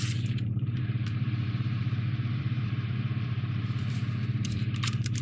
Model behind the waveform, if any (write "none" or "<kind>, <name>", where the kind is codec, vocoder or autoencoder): vocoder, BigVGAN v2